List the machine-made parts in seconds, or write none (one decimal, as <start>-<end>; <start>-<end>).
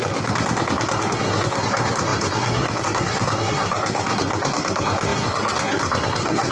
0.0-6.5